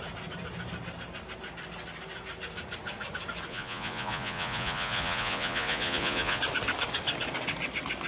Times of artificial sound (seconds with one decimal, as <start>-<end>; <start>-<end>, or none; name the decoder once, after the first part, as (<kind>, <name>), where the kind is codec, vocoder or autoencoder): 3.5-6.4 (vocoder, Vocos)